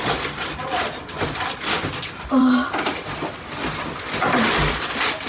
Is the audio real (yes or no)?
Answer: no